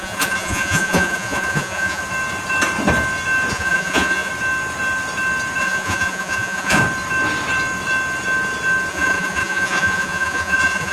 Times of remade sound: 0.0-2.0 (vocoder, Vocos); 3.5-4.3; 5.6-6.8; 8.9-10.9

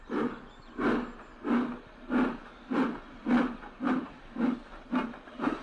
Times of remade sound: none

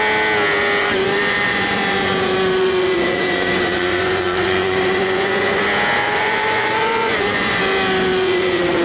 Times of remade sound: 0.8-5.6 (vocoder, Vocos); 6.0-7.6; 8.1-8.8

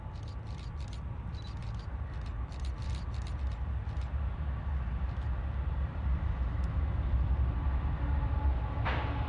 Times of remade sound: none